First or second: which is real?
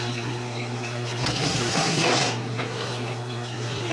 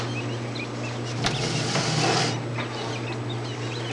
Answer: second